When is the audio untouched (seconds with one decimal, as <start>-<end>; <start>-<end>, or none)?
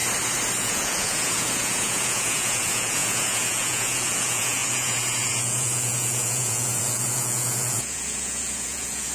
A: 0.0-0.6